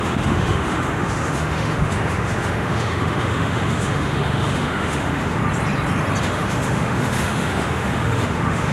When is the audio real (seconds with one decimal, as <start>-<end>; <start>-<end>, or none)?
5.4-6.2

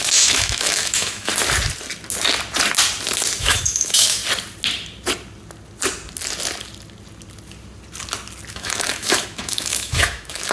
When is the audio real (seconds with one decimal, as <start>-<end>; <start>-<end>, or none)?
1.3-3.4; 4.2-8.5

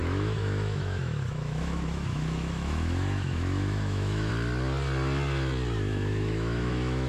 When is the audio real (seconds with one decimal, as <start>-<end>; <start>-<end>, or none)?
4.3-5.9

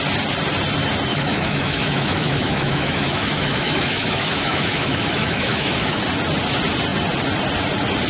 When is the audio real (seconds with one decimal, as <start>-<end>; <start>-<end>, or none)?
0.0-1.1; 6.0-8.1